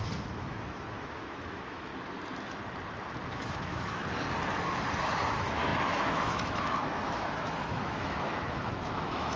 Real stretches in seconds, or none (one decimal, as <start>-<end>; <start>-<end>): 1.9-3.3; 4.0-5.3